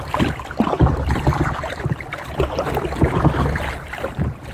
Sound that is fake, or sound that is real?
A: fake